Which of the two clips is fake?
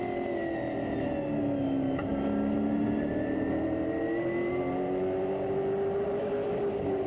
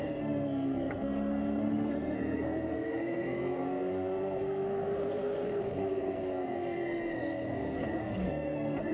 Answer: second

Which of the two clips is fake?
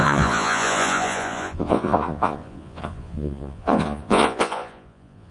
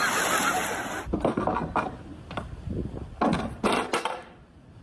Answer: first